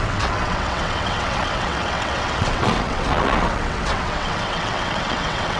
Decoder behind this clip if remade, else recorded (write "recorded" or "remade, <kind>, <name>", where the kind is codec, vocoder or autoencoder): remade, vocoder, WaveNeXt